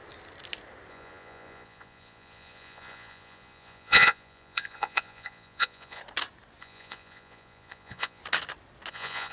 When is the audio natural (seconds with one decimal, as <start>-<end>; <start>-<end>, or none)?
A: 0.0-0.9; 6.0-6.6; 8.2-8.9